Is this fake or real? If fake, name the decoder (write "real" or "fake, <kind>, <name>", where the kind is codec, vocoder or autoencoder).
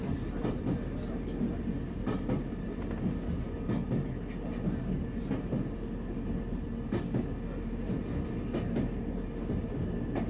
real